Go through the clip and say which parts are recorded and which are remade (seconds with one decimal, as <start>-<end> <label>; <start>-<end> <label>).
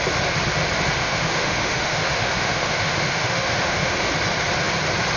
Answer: 0.0-1.0 recorded; 1.0-4.1 remade; 4.1-5.2 recorded